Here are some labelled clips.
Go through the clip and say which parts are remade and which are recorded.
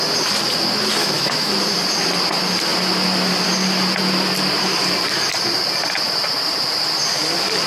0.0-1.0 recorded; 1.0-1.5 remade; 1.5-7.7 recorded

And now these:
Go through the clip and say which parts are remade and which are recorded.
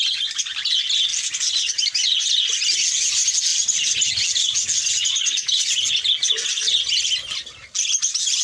0.0-8.4 recorded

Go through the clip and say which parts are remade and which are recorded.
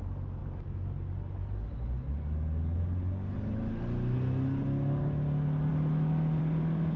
0.0-5.7 recorded; 5.7-6.4 remade; 6.4-7.0 recorded